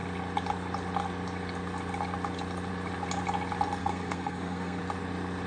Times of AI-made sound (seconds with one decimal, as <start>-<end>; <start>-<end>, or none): 3.8-4.8

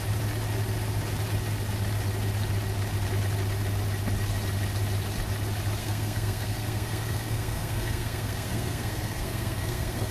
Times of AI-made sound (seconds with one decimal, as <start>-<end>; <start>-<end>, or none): 5.8-10.1

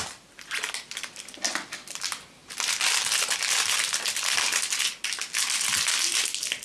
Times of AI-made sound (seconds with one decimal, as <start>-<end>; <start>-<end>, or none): none

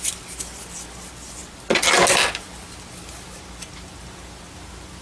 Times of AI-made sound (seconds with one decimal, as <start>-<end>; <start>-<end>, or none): none

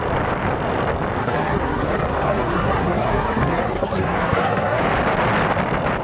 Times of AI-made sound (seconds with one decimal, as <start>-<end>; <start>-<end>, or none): 1.2-4.8